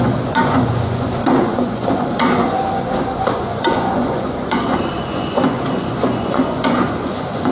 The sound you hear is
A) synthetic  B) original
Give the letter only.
A